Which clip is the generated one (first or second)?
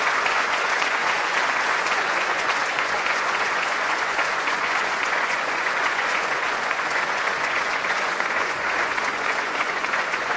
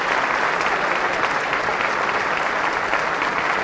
first